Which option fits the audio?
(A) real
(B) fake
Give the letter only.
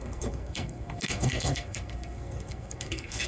B